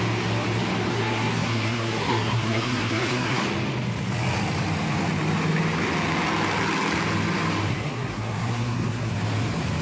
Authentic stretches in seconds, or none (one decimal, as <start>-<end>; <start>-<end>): 0.0-0.9; 3.4-7.7; 9.1-9.8